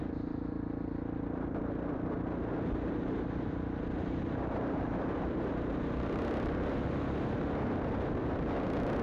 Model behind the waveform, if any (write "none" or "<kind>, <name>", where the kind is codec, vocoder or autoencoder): none